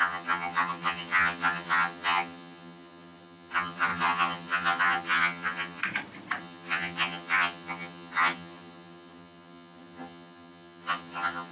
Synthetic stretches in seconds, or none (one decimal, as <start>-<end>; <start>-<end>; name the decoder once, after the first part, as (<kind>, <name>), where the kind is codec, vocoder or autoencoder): 0.0-5.8 (vocoder, HiFi-GAN); 6.4-11.5